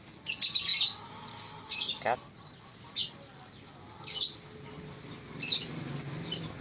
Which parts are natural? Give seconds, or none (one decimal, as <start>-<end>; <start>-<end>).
0.0-6.6